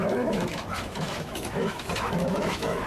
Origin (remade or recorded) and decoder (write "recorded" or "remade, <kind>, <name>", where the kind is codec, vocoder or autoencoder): remade, autoencoder, DAC-VAE